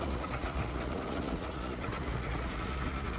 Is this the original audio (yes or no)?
no